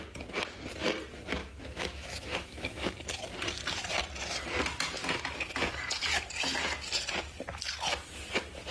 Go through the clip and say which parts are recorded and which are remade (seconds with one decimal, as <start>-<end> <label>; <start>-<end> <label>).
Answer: 0.0-1.4 recorded; 1.4-2.9 remade; 2.9-8.7 recorded